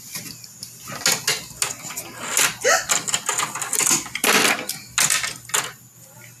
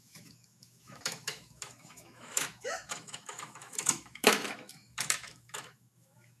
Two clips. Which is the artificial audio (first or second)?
second